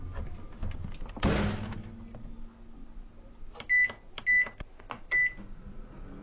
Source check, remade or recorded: recorded